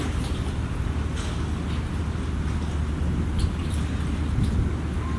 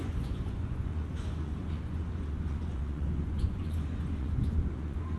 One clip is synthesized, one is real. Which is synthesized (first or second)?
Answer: second